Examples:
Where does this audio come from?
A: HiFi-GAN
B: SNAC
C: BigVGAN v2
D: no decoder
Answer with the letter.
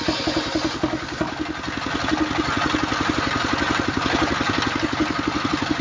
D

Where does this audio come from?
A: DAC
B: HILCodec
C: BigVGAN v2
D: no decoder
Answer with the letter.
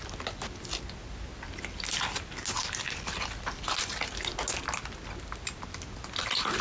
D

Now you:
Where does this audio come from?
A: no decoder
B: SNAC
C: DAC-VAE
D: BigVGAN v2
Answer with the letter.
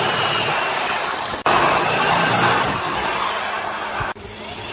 A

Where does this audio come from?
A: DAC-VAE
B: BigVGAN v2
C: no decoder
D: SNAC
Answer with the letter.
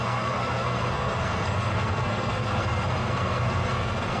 D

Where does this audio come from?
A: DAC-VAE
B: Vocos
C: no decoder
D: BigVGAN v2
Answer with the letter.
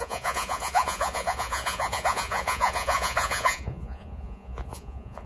B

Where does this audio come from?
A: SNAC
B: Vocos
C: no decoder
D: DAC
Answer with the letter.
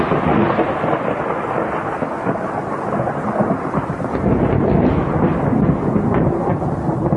C